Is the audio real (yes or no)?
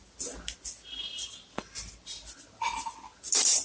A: yes